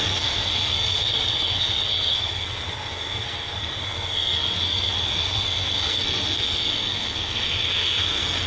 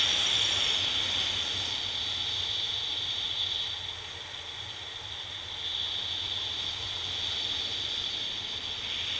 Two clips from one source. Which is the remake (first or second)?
first